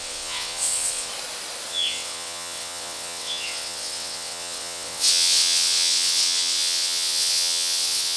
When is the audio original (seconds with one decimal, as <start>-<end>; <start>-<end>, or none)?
1.1-1.7